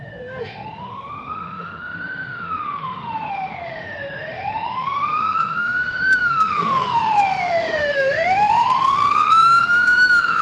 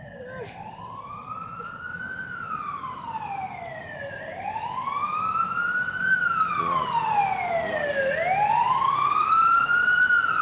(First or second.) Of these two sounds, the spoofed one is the first